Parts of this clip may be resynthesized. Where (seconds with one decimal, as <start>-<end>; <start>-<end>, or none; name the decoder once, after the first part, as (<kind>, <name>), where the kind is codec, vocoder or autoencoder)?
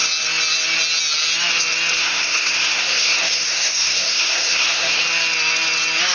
2.0-5.0 (codec, SNAC)